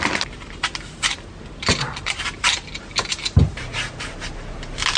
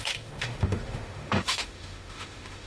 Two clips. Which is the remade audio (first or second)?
second